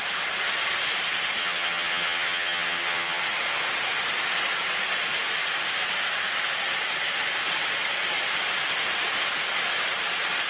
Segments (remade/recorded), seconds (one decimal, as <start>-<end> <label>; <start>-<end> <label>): 0.0-1.4 recorded; 1.4-3.2 remade; 3.2-10.5 recorded